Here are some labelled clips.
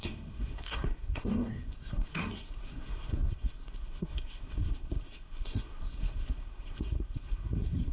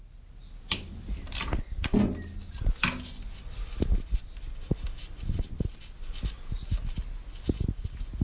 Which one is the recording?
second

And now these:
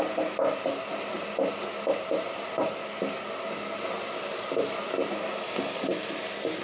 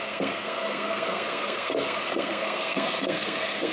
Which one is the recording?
first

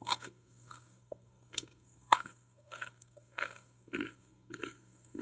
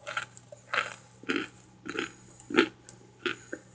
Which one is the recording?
second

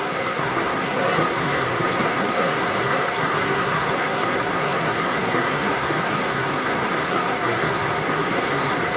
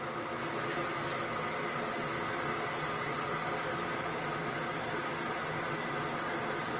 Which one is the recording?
second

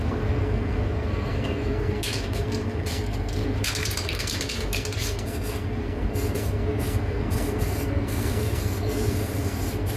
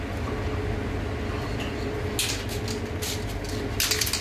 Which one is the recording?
second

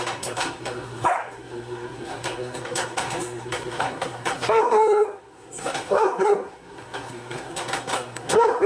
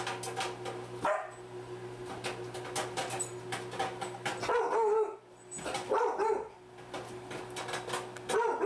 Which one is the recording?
second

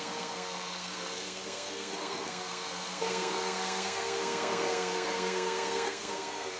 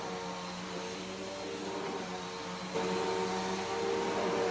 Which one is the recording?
second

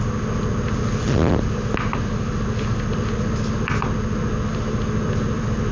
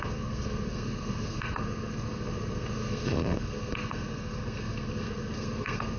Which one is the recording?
first